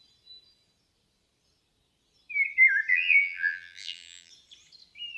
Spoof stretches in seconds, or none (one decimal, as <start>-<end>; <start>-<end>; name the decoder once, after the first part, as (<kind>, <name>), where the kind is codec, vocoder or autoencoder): 2.9-4.3 (vocoder, BigVGAN v2)